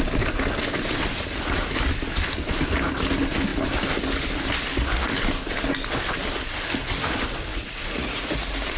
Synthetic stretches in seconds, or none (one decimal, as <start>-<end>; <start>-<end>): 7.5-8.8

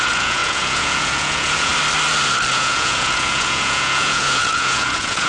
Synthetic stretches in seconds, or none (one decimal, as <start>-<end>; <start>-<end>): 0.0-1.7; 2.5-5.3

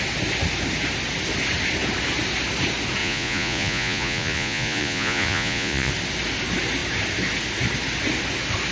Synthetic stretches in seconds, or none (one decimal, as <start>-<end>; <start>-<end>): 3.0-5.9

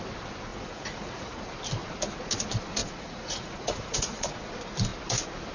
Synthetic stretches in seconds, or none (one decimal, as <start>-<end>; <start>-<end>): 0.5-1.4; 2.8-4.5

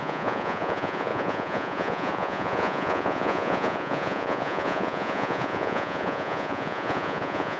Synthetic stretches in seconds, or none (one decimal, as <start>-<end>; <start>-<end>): 0.0-7.6

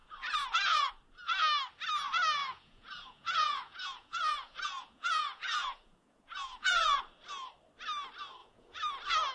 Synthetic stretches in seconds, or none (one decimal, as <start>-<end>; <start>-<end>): 0.0-0.9; 2.4-7.0; 8.4-8.9